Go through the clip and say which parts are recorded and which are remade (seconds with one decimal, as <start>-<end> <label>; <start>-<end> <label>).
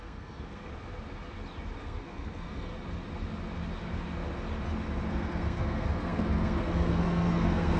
0.0-0.7 remade; 0.7-1.8 recorded; 1.8-2.7 remade; 2.7-5.1 recorded; 5.1-7.8 remade